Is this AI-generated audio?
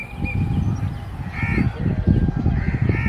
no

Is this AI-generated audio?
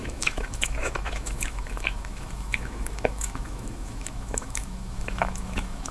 yes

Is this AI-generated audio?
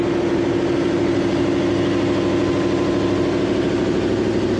no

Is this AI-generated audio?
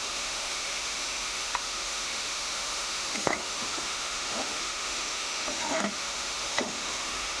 yes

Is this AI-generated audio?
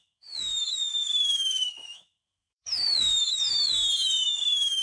yes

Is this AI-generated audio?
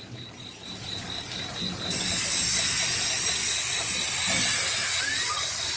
no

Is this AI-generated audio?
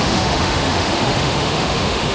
yes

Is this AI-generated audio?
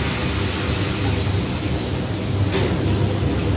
no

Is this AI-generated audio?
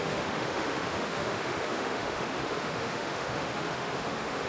yes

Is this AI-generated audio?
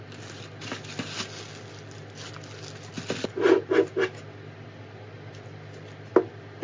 no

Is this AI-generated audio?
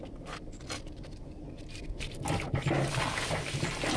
no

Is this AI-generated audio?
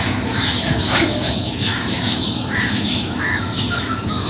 yes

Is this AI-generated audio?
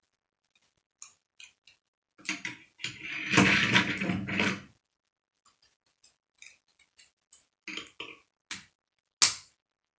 no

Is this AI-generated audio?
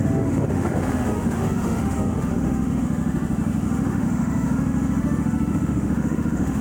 yes